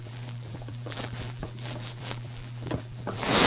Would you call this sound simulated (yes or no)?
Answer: yes